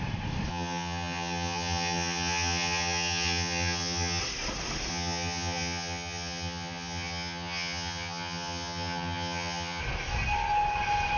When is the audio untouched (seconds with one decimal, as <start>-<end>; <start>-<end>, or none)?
0.0-0.5; 4.2-4.9; 9.8-11.2